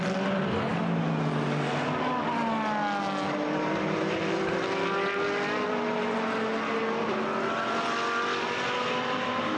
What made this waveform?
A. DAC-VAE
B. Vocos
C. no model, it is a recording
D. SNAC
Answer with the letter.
C